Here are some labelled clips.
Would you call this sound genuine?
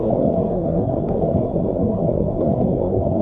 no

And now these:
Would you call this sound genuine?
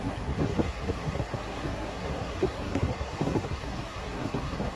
no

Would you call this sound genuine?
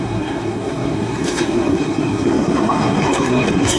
no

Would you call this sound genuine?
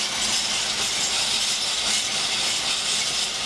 yes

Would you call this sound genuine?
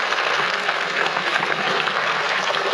no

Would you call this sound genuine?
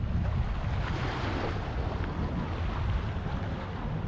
yes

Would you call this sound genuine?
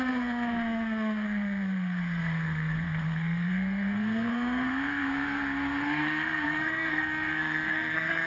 no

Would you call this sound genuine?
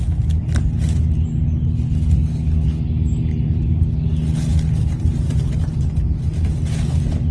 yes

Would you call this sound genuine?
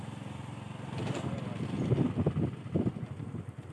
yes